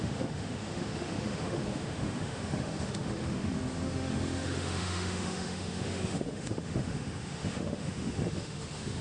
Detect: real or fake fake